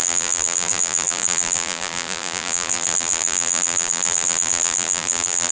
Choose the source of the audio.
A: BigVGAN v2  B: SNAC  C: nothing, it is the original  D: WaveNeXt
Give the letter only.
A